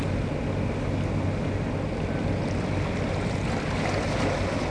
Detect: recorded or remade recorded